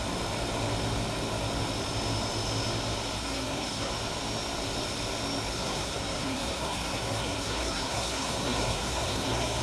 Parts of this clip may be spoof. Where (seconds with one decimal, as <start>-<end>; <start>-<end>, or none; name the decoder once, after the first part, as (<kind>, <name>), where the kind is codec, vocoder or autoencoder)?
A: 3.2-3.9 (codec, SNAC); 5.5-9.6